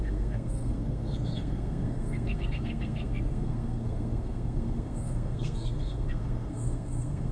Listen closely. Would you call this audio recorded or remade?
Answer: remade